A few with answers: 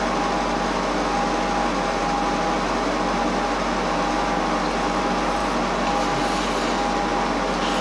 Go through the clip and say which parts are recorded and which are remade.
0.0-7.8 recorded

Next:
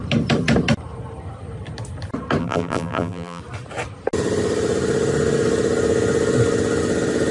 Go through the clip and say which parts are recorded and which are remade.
0.0-2.4 recorded; 2.4-3.4 remade; 3.4-7.3 recorded